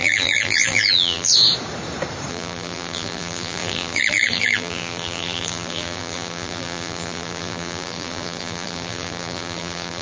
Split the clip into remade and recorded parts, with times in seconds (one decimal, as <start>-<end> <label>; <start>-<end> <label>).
0.0-1.3 remade; 1.3-2.3 recorded; 2.3-10.0 remade